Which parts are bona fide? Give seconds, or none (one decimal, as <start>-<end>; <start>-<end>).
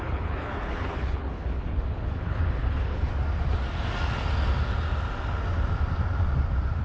3.1-6.8